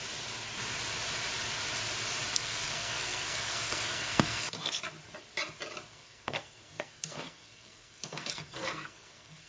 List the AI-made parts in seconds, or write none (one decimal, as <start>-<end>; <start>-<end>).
2.3-4.8; 5.9-9.5